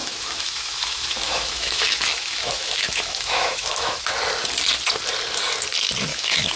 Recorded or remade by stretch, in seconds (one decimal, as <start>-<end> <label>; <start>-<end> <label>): 0.0-4.0 remade; 4.0-6.1 recorded; 6.1-6.6 remade